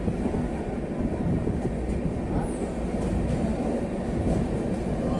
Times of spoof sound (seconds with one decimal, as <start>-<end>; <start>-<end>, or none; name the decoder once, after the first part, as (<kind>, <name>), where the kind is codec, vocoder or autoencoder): none